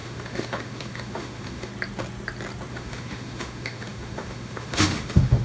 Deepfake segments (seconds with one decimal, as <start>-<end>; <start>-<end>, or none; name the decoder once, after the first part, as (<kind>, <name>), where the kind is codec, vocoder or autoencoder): 0.0-1.7 (autoencoder, DAC-VAE); 2.7-5.4